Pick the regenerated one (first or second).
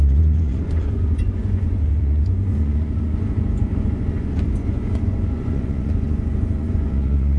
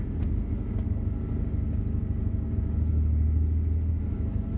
first